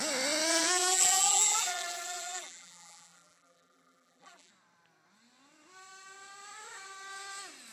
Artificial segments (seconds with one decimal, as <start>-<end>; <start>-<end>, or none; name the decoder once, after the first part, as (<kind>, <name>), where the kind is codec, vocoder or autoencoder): 0.5-4.5 (vocoder, BigVGAN v2)